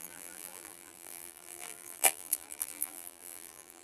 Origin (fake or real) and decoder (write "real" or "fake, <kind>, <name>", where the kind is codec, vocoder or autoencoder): fake, vocoder, BigVGAN v2